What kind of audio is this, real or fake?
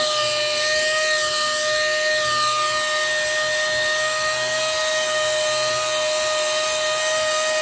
real